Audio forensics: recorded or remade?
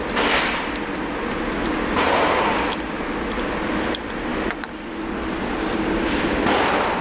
recorded